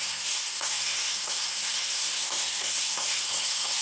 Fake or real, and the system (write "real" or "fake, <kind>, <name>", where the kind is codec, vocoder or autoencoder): fake, codec, SNAC